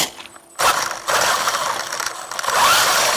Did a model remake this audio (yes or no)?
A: no